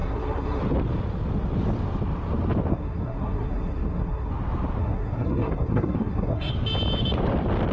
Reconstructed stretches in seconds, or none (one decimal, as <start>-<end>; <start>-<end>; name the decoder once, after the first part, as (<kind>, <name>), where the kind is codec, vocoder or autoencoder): 0.0-0.6 (codec, SNAC); 2.7-4.3; 4.8-6.5